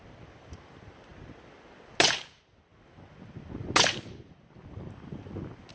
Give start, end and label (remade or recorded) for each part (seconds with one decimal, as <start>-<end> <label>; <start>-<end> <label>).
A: 0.0-5.7 recorded